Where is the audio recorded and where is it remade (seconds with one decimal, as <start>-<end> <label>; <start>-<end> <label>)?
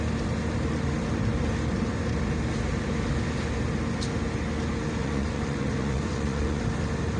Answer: 0.0-5.0 recorded; 5.0-6.6 remade; 6.6-7.2 recorded